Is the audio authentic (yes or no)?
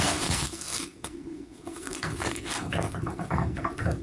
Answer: no